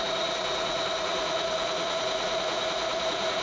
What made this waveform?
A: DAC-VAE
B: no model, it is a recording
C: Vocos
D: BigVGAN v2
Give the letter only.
C